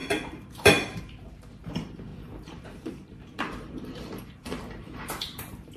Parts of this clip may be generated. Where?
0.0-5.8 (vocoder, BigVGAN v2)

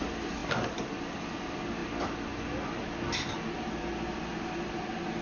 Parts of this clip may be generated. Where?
none

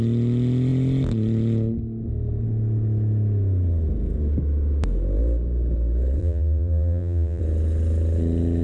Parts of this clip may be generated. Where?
6.2-7.4 (vocoder, BigVGAN v2)